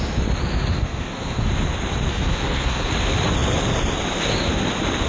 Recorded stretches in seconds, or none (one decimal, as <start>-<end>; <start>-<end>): 0.0-0.7; 1.5-2.1; 2.9-5.1